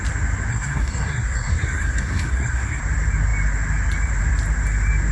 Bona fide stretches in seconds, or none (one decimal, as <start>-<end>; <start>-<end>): 0.0-0.5; 2.8-5.1